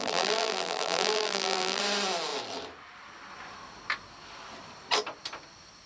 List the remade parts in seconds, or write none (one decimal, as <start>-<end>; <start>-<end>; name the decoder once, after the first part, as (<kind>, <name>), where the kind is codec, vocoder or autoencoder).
0.0-1.8 (vocoder, BigVGAN v2)